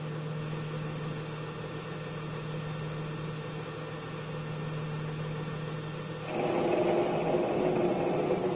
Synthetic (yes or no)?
no